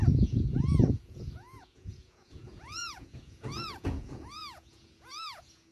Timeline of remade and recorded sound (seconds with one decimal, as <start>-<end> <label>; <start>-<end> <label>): 0.0-5.7 remade